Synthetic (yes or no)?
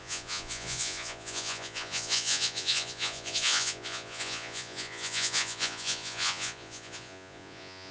yes